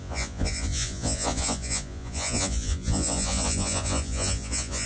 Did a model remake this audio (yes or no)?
yes